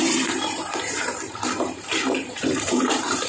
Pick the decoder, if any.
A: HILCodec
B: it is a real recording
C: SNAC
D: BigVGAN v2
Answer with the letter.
D